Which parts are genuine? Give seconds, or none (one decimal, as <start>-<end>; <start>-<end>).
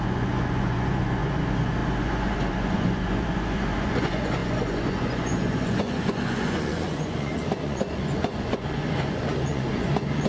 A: none